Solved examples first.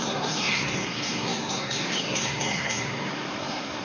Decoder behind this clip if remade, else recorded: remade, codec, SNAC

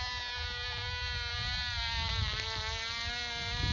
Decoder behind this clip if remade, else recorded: recorded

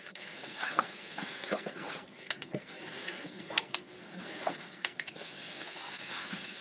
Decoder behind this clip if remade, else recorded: remade, codec, SNAC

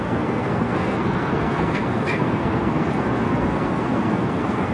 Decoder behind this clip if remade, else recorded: remade, codec, SNAC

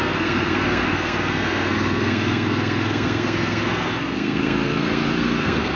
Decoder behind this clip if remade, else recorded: remade, codec, SNAC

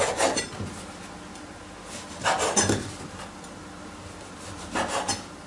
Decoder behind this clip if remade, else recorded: recorded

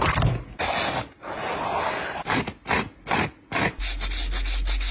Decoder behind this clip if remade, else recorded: recorded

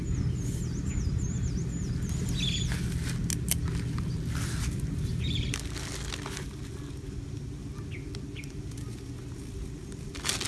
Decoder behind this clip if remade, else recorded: recorded